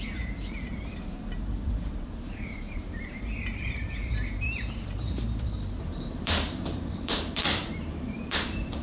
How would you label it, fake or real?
fake